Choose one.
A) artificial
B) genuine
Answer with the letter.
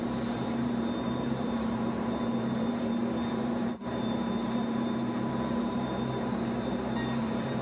A